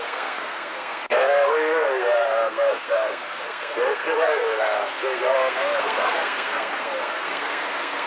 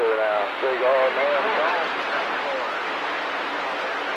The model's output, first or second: first